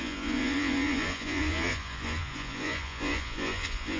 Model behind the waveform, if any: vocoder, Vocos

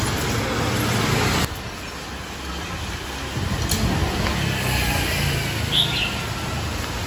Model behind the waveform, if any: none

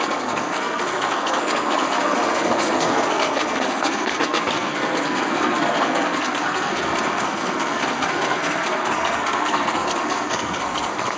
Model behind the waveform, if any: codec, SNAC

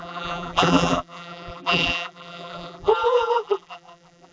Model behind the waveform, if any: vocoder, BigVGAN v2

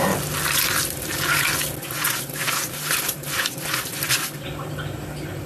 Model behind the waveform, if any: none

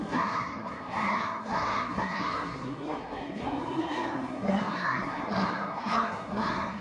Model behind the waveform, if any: codec, SNAC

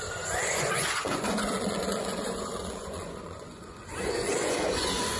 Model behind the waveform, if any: vocoder, Vocos